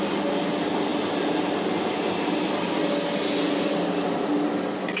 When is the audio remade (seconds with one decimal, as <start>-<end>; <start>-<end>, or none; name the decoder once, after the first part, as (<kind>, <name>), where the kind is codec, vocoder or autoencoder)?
none